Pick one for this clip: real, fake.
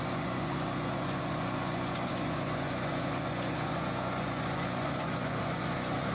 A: fake